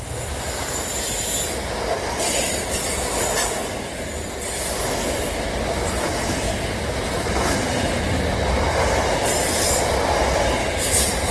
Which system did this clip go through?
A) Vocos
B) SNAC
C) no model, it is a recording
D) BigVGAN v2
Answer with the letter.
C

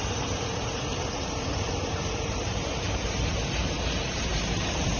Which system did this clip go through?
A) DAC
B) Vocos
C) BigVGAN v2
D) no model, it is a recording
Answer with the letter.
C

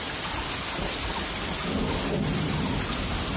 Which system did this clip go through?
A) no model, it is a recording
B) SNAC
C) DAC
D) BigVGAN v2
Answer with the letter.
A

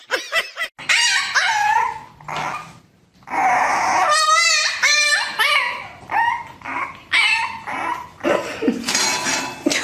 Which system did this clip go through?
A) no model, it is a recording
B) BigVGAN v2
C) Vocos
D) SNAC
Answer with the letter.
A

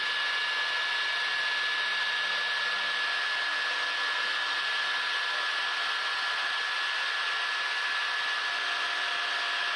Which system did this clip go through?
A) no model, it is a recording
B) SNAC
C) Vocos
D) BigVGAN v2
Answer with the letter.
A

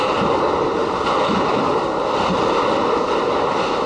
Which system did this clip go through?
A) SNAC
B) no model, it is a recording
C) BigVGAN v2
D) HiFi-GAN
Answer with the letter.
B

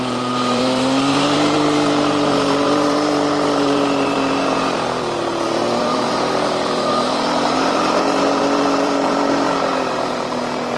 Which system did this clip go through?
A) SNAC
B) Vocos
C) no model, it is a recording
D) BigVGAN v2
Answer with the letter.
D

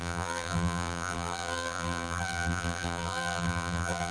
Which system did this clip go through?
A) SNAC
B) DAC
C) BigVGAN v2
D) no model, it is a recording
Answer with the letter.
C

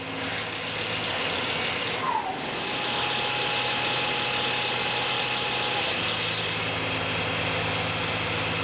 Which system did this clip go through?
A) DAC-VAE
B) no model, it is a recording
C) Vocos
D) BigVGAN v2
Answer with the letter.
B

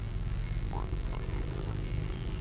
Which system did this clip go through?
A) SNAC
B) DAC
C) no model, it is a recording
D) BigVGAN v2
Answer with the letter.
D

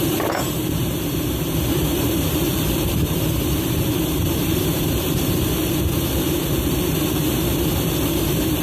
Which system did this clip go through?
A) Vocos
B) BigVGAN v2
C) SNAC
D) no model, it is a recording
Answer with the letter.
B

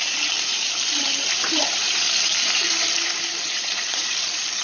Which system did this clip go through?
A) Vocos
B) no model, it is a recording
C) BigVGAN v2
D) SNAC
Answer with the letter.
C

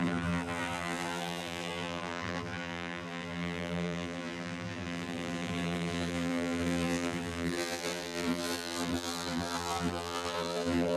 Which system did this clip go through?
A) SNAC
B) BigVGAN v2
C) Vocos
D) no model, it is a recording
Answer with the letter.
B